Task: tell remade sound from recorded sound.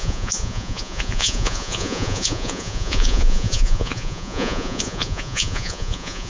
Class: remade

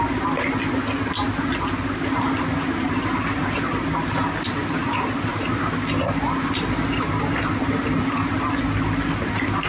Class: recorded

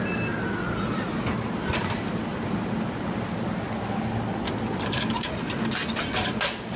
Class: recorded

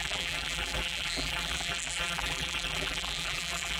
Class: remade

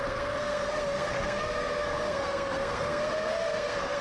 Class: remade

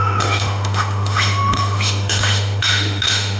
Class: remade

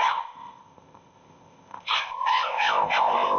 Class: remade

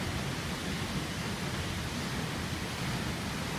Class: recorded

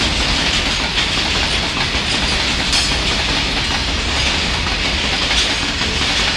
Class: recorded